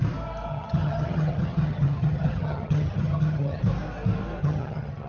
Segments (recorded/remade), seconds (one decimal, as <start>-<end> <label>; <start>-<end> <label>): 0.0-0.5 recorded; 0.5-3.6 remade; 3.6-4.4 recorded; 4.4-5.1 remade